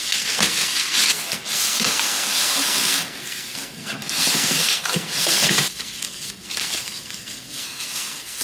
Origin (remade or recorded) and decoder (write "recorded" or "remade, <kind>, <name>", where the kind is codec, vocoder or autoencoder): remade, codec, SNAC